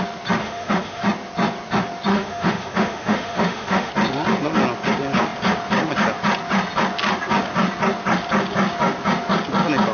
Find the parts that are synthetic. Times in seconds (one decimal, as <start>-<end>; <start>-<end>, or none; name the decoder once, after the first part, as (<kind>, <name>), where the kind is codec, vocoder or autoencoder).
0.4-1.0 (autoencoder, DAC-VAE); 2.1-3.9

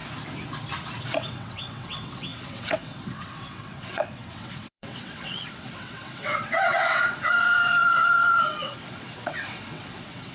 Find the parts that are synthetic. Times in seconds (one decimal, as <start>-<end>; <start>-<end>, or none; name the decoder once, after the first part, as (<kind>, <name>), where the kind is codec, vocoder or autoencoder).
1.0-10.3 (vocoder, WaveNeXt)

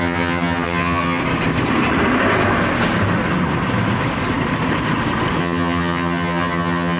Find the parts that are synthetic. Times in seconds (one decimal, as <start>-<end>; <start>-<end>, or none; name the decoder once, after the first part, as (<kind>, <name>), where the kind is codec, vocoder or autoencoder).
0.0-1.2 (vocoder, HiFi-GAN); 5.4-7.0

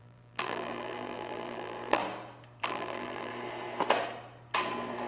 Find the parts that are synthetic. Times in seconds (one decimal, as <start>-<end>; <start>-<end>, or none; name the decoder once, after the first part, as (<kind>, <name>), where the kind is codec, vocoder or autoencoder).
0.0-2.0 (vocoder, BigVGAN v2); 2.6-3.3

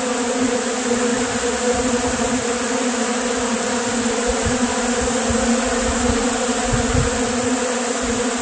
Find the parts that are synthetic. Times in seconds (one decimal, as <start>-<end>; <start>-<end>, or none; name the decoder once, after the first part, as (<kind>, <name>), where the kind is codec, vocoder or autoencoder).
none